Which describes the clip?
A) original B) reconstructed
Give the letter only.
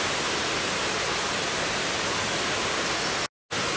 A